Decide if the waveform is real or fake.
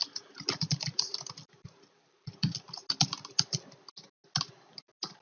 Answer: real